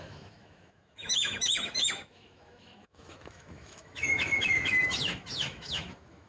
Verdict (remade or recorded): remade